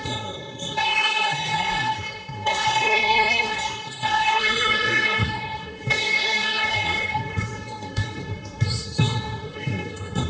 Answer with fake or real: fake